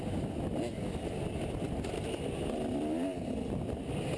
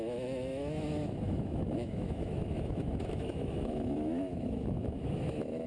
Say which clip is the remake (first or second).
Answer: second